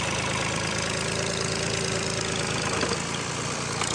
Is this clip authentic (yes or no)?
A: yes